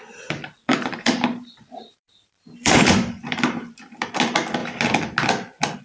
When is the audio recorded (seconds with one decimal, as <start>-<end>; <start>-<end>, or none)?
0.0-0.7; 3.8-5.8